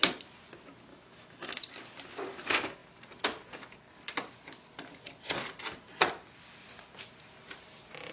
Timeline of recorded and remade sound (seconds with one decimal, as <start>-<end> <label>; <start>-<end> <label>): 0.0-0.9 recorded; 0.9-1.7 remade; 1.7-8.1 recorded